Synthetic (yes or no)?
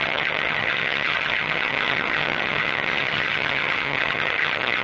yes